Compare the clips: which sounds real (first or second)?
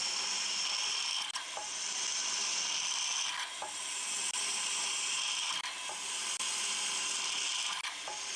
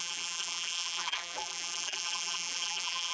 first